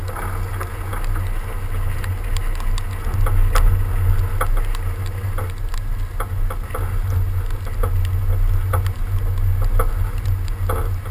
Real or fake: real